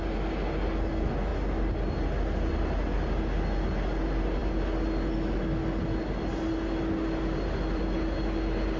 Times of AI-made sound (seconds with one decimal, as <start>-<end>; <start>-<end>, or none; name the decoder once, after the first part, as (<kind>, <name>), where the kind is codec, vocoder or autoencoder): none

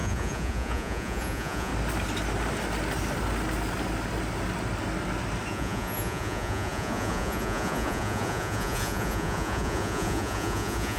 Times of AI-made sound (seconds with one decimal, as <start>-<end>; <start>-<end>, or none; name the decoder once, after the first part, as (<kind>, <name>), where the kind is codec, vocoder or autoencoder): 0.0-1.7 (vocoder, Vocos); 5.5-11.0

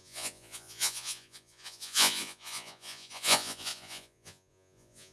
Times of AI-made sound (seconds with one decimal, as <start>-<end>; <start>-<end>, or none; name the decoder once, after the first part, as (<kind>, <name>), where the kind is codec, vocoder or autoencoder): 0.0-5.1 (vocoder, Vocos)